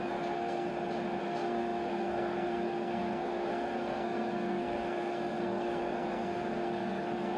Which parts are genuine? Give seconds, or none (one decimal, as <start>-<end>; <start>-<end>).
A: 0.7-1.2